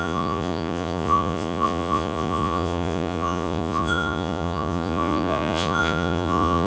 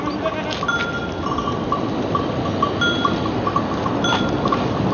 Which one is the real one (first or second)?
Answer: second